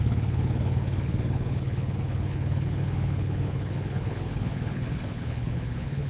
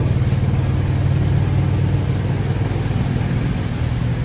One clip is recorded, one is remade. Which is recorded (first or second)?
second